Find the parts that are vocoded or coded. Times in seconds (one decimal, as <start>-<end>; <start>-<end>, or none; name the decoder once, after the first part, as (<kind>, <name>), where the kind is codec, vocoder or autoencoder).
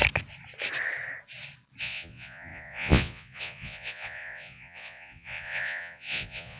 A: 1.8-6.6 (vocoder, Vocos)